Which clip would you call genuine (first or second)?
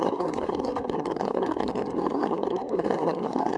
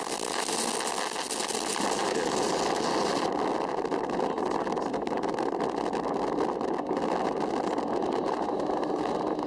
second